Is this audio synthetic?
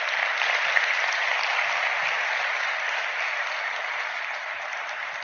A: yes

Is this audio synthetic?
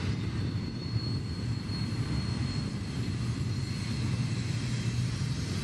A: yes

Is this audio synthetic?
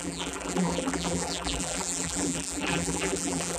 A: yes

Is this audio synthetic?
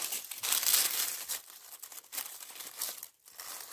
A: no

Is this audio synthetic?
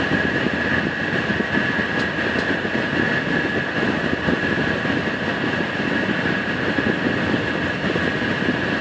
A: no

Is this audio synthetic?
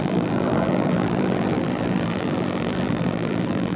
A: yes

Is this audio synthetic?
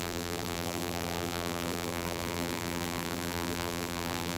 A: yes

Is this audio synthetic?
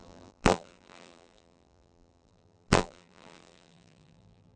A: yes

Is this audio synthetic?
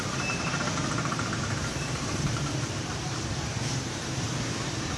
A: yes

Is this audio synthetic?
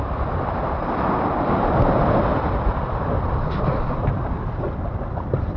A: no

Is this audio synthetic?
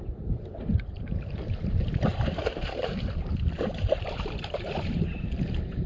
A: yes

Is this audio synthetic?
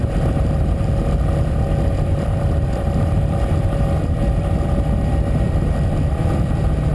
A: yes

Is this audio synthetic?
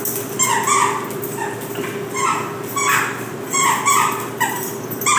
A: no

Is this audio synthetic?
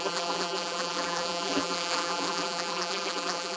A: yes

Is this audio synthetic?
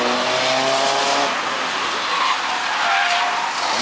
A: no